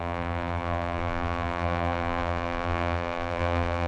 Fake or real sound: fake